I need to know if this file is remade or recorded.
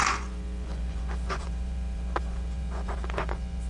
remade